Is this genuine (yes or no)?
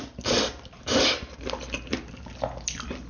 yes